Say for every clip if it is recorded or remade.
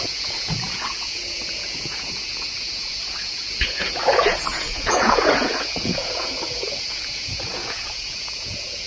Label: remade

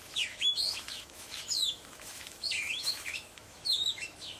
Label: remade